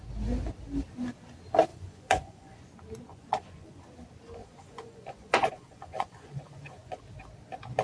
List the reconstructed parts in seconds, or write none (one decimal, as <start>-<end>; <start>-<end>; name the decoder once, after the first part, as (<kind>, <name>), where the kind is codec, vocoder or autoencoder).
1.7-2.6 (vocoder, Vocos); 3.1-3.8; 4.4-7.0